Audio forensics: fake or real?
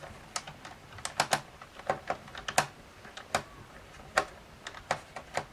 real